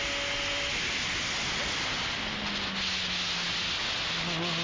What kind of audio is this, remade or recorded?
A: recorded